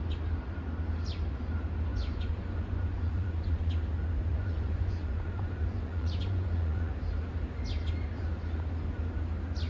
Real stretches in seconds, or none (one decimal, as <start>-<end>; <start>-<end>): 0.0-1.9; 3.7-4.3; 6.9-9.7